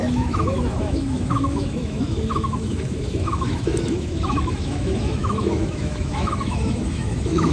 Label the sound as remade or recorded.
remade